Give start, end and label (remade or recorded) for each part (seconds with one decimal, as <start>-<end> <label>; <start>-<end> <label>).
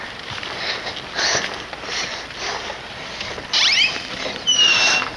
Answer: 0.0-5.2 recorded